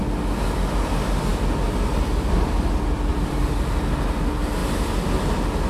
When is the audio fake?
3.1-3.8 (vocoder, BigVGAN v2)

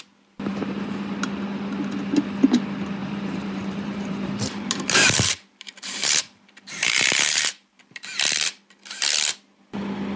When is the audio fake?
0.5-1.0 (vocoder, BigVGAN v2); 3.0-7.8

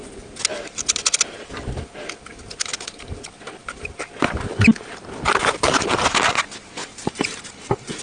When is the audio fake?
6.8-7.4 (vocoder, BigVGAN v2)

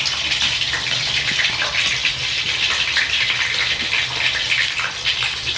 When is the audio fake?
none

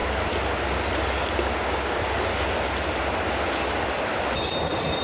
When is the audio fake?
none

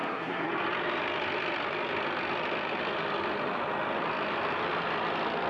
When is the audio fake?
0.0-0.5 (codec, SNAC)

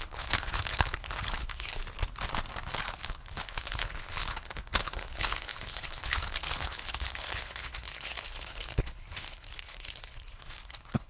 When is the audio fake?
0.0-1.8 (codec, HILCodec); 2.7-11.1